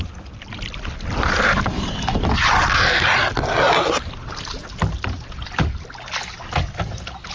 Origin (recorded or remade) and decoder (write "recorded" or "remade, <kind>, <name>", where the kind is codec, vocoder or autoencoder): recorded